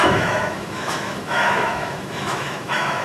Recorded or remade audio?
remade